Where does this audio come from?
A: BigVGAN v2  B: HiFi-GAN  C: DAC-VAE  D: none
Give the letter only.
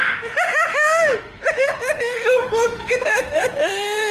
C